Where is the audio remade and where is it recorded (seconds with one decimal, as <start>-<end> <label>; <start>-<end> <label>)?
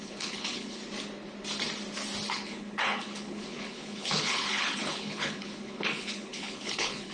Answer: 0.0-0.8 remade; 0.8-2.3 recorded; 2.3-7.1 remade